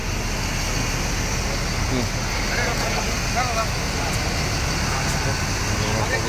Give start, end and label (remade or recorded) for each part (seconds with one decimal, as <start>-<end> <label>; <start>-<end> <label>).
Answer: 0.0-6.3 recorded

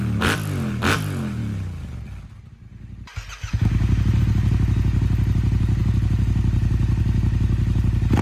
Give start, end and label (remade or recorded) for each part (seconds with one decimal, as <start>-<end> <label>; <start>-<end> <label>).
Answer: 0.0-8.2 recorded

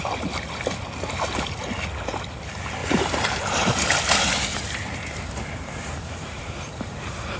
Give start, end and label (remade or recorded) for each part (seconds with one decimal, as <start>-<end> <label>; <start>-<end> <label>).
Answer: 0.0-2.8 recorded; 2.8-3.9 remade; 3.9-4.5 recorded; 4.5-6.6 remade; 6.6-7.4 recorded

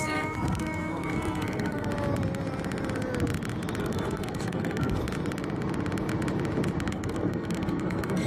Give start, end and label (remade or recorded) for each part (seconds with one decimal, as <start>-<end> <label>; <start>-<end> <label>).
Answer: 0.0-1.9 remade; 1.9-3.8 recorded; 3.8-5.0 remade; 5.0-6.9 recorded; 6.9-8.3 remade